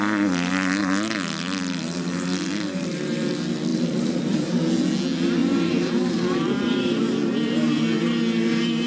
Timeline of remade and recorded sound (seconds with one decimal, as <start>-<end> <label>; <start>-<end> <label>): 0.0-0.8 recorded; 0.8-3.3 remade; 3.3-3.7 recorded; 3.7-4.6 remade; 4.6-5.4 recorded; 5.4-7.0 remade; 7.0-8.9 recorded